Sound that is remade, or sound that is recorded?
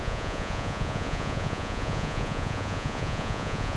remade